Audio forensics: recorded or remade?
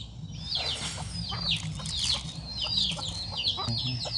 recorded